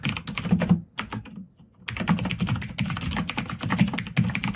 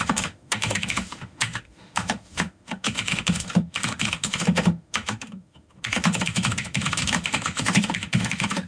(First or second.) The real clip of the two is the first